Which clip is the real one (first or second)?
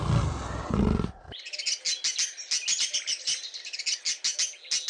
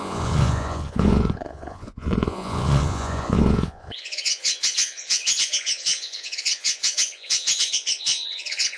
first